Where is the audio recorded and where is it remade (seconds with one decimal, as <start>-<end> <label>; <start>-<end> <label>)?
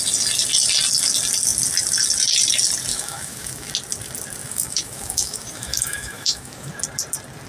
0.0-2.9 recorded; 2.9-3.7 remade; 3.7-4.4 recorded; 4.4-6.7 remade; 6.7-7.5 recorded